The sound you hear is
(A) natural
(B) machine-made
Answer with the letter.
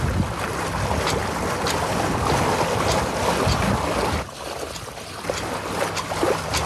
A